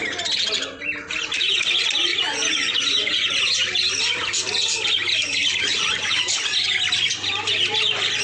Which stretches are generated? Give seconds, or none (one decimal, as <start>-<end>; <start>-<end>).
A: 2.1-3.4; 5.7-6.2